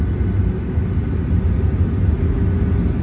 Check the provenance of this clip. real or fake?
real